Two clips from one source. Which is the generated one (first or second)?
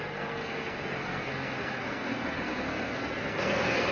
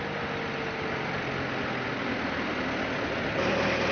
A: first